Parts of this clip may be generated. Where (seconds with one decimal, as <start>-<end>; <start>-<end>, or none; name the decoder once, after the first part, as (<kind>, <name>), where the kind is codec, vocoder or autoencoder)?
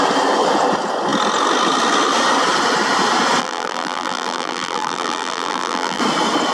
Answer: 3.4-6.0 (vocoder, BigVGAN v2)